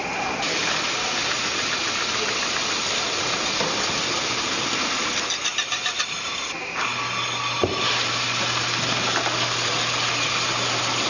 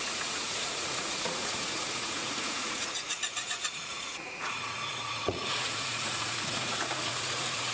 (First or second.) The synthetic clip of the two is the second